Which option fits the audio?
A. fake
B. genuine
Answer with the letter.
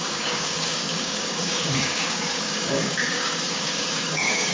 A